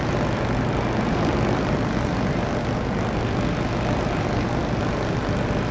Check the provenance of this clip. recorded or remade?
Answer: recorded